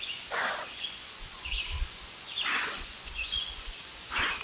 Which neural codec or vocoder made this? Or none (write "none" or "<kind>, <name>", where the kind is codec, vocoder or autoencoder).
vocoder, Vocos